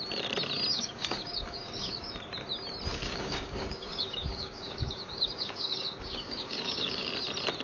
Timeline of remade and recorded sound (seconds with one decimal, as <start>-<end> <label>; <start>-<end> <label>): 0.0-0.7 recorded; 0.7-2.1 remade; 2.1-2.9 recorded; 2.9-7.1 remade; 7.1-7.6 recorded